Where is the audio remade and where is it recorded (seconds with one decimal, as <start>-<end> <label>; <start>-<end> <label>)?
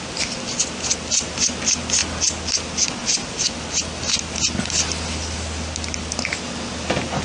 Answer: 0.0-7.2 recorded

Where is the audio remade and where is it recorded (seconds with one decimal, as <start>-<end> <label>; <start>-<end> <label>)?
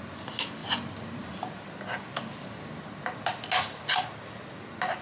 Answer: 0.0-0.6 recorded; 0.6-1.7 remade; 1.7-5.0 recorded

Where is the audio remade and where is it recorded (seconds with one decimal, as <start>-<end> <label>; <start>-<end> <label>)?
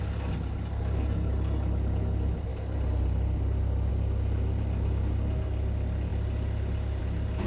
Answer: 0.0-7.5 recorded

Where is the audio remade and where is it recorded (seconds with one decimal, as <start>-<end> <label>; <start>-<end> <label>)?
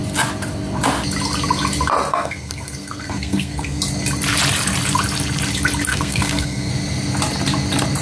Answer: 0.0-2.1 recorded; 2.1-3.8 remade; 3.8-5.9 recorded; 5.9-6.7 remade; 6.7-8.0 recorded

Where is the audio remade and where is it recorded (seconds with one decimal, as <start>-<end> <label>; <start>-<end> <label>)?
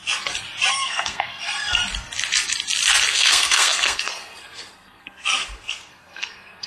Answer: 0.0-0.7 recorded; 0.7-1.8 remade; 1.8-3.1 recorded; 3.1-6.7 remade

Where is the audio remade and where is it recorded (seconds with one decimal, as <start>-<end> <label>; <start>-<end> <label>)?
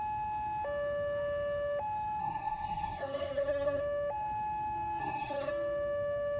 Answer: 0.0-2.2 recorded; 2.2-3.8 remade; 3.8-5.0 recorded; 5.0-5.5 remade; 5.5-6.4 recorded